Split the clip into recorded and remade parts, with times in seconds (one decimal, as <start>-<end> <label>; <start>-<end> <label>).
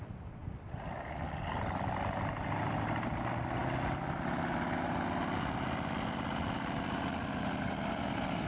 0.0-8.5 recorded